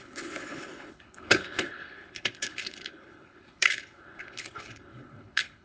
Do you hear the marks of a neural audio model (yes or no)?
yes